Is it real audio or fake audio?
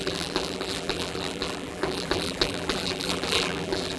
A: fake